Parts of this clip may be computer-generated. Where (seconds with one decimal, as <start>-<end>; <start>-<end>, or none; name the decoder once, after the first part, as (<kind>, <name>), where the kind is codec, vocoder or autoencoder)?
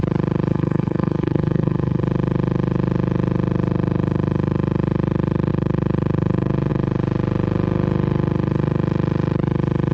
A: 0.5-2.0 (codec, SNAC)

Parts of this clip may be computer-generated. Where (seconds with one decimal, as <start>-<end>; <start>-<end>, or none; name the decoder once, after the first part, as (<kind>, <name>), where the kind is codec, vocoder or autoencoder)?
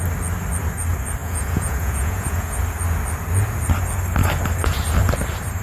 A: 1.2-2.6 (vocoder, Vocos)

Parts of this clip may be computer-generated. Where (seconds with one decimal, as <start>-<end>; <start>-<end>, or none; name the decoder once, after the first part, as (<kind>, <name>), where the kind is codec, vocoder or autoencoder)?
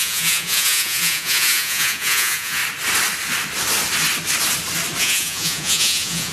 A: 0.0-2.6 (vocoder, Vocos); 5.0-6.3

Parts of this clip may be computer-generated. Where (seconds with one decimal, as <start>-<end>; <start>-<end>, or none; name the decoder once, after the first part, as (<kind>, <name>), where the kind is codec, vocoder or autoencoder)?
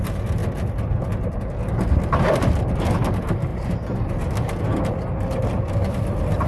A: 0.0-0.4 (vocoder, BigVGAN v2); 1.7-6.5